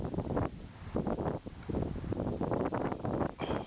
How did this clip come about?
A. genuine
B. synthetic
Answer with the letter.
A